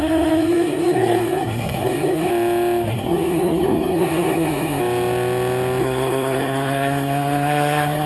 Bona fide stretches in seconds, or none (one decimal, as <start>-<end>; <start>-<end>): 2.3-2.9; 4.8-5.8